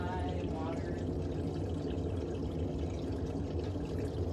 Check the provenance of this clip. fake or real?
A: real